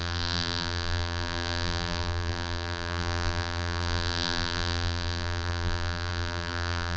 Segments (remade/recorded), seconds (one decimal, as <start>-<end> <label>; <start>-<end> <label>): 0.0-7.0 remade